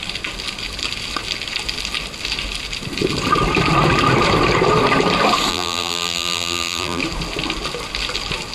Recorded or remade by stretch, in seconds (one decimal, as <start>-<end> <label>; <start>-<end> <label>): 0.0-5.5 recorded; 5.5-7.0 remade; 7.0-8.5 recorded